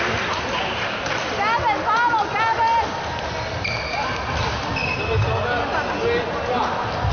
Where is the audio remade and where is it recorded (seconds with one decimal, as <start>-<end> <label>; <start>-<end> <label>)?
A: 0.0-7.1 recorded